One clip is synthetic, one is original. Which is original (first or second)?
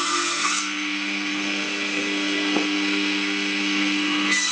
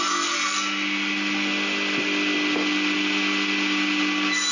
second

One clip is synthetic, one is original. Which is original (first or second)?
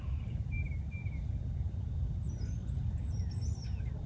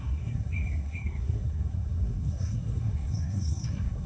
first